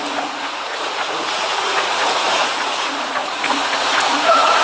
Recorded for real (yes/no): no